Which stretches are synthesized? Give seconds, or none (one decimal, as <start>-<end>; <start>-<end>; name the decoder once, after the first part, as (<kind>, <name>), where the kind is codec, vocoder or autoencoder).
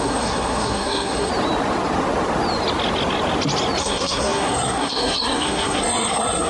0.0-1.3 (codec, SNAC); 3.8-6.5